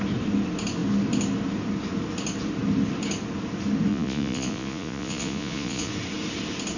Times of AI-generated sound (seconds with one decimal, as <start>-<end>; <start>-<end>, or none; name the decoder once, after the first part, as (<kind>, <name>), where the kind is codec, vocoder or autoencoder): 3.9-5.9 (vocoder, Vocos)